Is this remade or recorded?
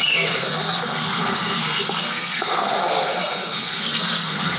remade